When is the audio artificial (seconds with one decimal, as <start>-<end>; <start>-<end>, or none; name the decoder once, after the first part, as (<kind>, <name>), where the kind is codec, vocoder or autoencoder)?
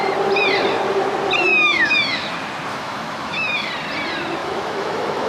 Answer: 1.5-2.3 (autoencoder, DAC-VAE); 2.7-3.7; 4.4-5.3